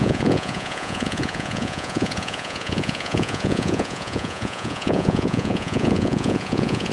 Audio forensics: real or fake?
fake